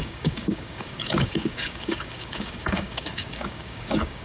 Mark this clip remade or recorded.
remade